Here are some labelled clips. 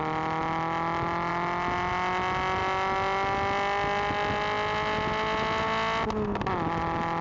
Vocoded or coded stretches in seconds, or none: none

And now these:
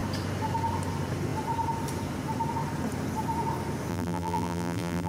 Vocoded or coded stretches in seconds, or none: 3.9-5.1 (vocoder, BigVGAN v2)

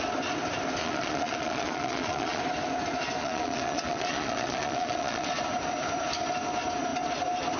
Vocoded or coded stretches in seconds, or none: 0.8-2.4 (vocoder, Vocos); 3.2-5.3

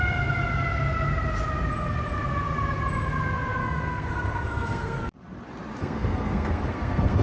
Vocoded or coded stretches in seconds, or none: 3.6-5.0 (codec, SNAC); 5.8-7.2